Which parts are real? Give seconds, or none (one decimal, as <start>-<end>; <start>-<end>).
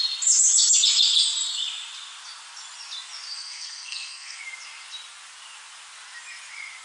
0.0-3.3; 4.4-6.8